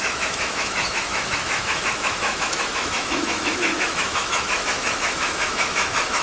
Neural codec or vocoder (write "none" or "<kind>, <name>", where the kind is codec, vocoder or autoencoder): autoencoder, DAC-VAE